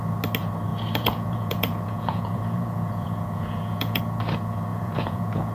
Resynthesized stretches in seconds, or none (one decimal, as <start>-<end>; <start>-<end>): 0.7-4.0; 4.7-5.5